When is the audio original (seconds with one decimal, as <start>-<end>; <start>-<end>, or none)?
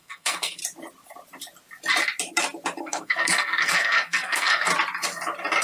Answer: 0.6-2.8; 4.7-5.6